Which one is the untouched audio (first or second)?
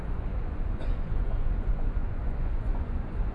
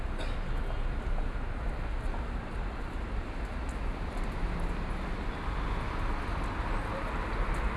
second